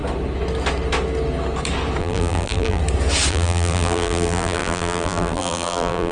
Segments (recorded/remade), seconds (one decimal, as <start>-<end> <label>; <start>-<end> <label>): 0.0-2.0 recorded; 2.0-2.8 remade; 2.8-3.3 recorded; 3.3-6.1 remade